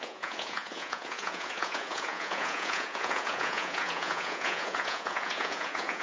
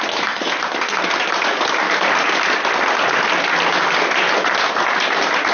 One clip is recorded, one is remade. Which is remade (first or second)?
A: first